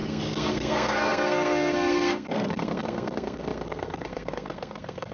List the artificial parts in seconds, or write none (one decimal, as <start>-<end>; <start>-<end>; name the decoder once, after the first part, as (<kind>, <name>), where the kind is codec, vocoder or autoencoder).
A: 0.0-5.1 (codec, SNAC)